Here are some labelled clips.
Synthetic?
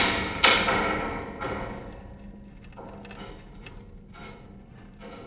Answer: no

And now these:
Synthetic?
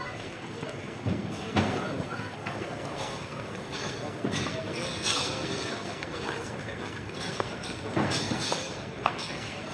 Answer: yes